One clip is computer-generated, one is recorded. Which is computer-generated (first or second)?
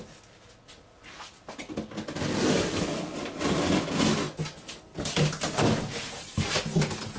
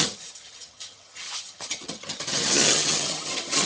second